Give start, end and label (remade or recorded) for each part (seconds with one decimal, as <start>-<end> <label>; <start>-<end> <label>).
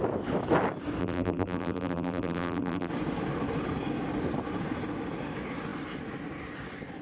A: 0.0-1.0 recorded; 1.0-2.9 remade; 2.9-7.0 recorded